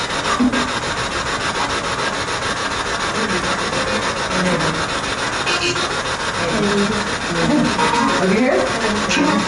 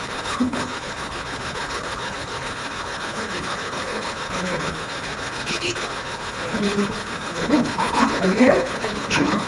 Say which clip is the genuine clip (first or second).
first